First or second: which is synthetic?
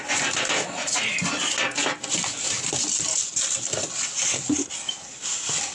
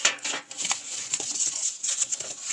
second